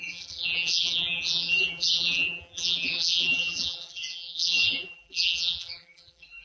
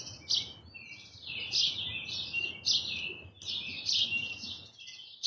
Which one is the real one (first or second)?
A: second